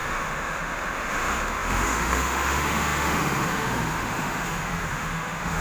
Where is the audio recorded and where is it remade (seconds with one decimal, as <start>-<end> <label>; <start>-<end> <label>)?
0.0-5.6 remade